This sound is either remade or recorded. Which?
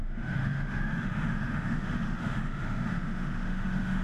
remade